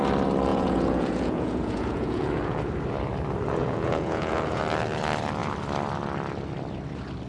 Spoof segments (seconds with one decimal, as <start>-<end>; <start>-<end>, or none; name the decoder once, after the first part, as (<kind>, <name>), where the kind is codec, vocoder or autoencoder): 0.5-2.6 (vocoder, Vocos); 3.6-4.6